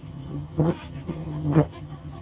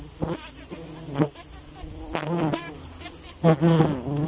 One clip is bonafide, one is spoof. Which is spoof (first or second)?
first